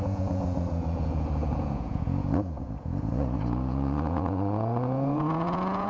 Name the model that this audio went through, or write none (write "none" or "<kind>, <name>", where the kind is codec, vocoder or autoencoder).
vocoder, Vocos